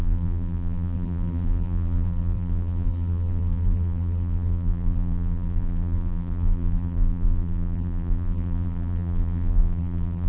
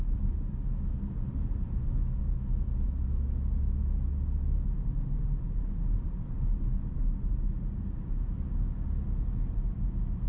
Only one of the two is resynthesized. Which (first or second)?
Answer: first